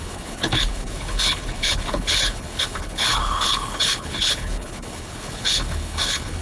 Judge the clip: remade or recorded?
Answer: remade